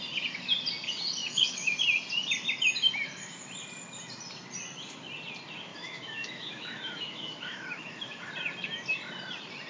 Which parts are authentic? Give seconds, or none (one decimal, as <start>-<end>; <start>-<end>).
0.0-1.2; 1.8-5.7; 8.3-9.7